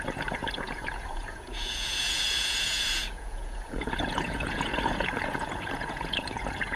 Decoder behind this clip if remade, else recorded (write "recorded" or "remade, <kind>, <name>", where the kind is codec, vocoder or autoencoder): remade, vocoder, Vocos